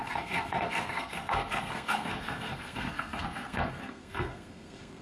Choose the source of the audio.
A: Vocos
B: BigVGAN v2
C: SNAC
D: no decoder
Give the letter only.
C